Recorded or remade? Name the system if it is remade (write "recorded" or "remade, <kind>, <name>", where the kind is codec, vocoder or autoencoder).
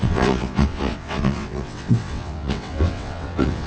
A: remade, vocoder, WaveNeXt